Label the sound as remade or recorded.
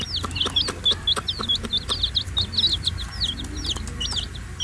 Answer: recorded